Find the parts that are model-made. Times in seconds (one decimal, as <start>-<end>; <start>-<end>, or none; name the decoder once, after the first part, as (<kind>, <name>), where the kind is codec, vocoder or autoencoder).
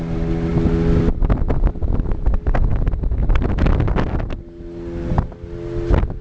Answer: none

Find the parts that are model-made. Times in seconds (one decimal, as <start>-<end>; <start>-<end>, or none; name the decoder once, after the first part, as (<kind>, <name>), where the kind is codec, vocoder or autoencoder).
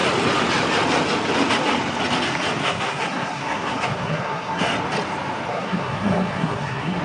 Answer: 2.6-4.6 (codec, SNAC); 5.5-7.0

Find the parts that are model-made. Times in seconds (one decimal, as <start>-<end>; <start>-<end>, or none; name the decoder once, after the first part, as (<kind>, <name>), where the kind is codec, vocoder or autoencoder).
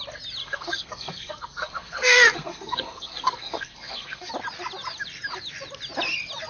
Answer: 0.4-4.3 (codec, SNAC)